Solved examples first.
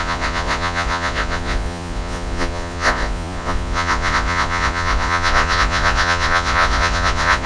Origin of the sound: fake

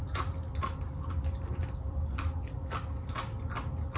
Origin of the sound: real